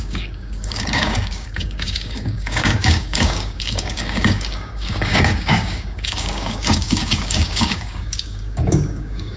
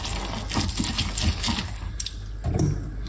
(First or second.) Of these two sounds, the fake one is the first